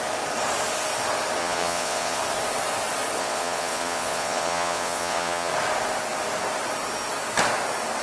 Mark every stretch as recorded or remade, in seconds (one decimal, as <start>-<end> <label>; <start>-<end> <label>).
0.0-1.4 recorded; 1.4-2.2 remade; 2.2-3.2 recorded; 3.2-5.5 remade; 5.5-8.0 recorded